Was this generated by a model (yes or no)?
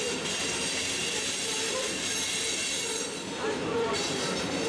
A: yes